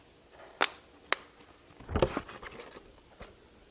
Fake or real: real